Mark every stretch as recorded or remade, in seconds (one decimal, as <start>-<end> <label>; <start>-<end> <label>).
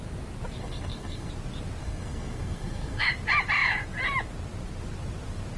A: 0.0-0.6 recorded; 0.6-1.3 remade; 1.3-1.8 recorded; 1.8-3.1 remade; 3.1-5.6 recorded